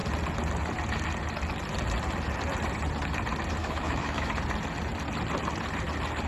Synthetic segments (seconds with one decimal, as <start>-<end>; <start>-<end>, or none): 3.6-4.3